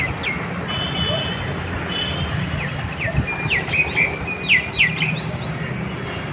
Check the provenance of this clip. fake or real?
real